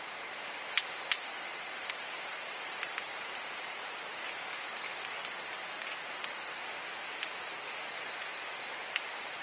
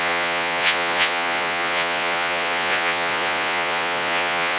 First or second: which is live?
first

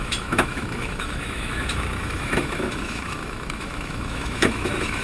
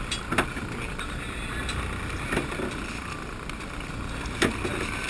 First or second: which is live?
second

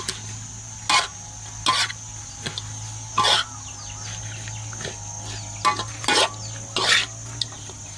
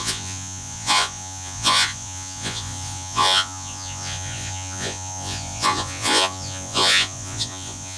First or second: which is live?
first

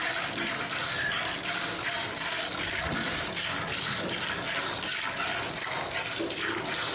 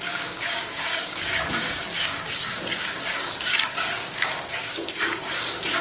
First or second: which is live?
first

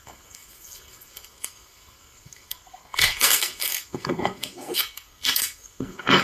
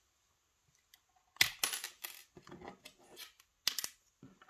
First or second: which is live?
second